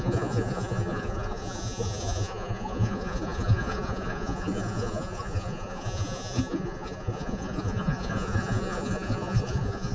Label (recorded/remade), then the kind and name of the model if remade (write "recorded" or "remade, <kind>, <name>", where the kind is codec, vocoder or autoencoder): remade, vocoder, Vocos